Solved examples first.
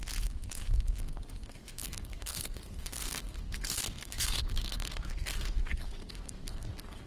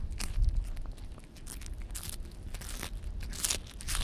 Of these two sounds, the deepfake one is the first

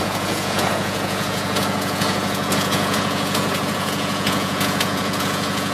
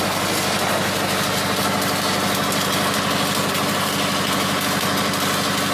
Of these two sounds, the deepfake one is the first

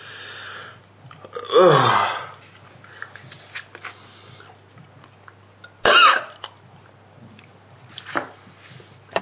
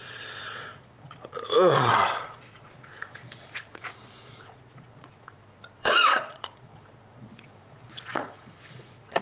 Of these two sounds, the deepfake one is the second